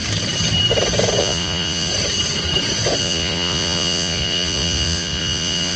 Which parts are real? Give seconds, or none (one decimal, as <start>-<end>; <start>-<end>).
0.0-1.2; 1.9-3.0